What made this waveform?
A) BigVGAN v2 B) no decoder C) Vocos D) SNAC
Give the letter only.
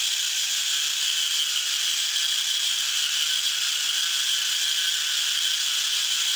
B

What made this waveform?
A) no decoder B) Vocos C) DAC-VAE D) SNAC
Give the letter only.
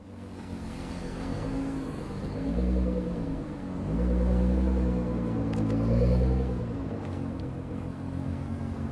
D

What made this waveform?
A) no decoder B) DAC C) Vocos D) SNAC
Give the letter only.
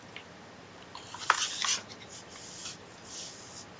A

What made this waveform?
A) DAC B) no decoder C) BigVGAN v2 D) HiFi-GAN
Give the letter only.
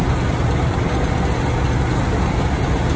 B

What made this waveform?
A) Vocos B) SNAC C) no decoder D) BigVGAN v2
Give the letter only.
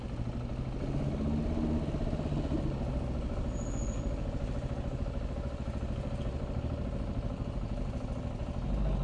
C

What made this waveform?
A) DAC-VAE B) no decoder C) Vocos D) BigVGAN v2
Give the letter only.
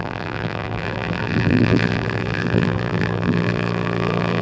D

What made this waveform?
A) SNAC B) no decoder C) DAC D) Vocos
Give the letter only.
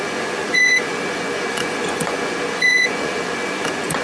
D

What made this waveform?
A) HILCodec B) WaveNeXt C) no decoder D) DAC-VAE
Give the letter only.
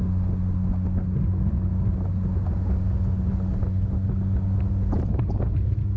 C